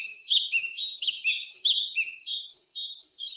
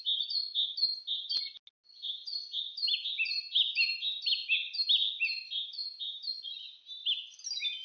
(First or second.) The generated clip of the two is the first